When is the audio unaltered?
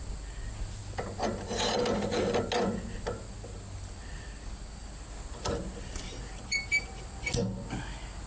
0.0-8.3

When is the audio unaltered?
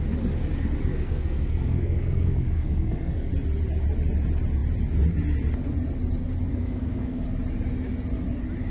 0.0-0.9; 3.3-6.5; 7.2-8.7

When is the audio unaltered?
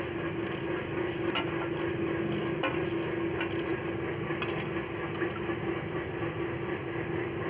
0.0-7.5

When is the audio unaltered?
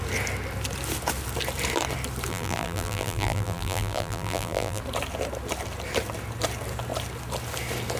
0.0-2.3; 4.8-8.0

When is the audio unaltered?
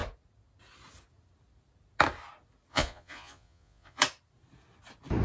0.0-2.7; 4.0-5.2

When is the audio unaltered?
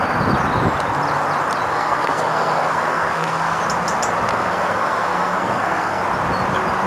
0.0-1.7; 3.6-4.3; 6.0-6.9